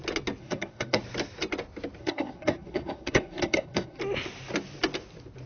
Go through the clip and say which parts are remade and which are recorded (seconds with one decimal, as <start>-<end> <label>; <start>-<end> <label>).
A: 0.0-0.4 recorded; 0.4-1.0 remade; 1.0-2.0 recorded; 2.0-4.0 remade; 4.0-5.5 recorded